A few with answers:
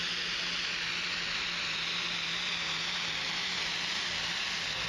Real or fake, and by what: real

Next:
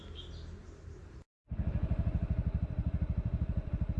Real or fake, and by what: real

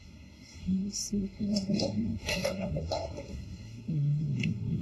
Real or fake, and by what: fake, codec, SNAC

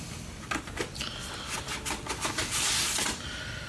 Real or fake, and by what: real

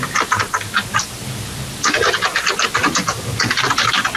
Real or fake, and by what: real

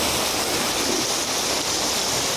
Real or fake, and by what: real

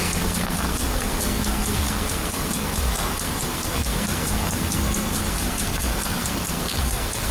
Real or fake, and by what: fake, codec, SNAC